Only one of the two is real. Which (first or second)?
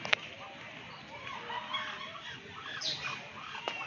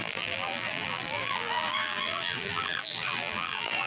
first